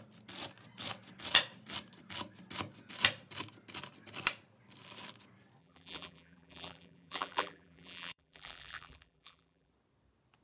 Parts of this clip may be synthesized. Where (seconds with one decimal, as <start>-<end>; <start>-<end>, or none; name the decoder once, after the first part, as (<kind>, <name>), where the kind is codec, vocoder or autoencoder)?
5.6-9.7 (vocoder, BigVGAN v2)